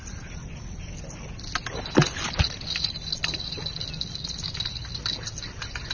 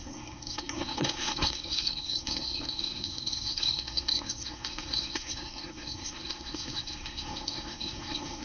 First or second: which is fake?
second